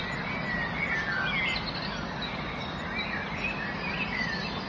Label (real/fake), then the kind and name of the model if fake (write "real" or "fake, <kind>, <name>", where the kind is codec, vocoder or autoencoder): real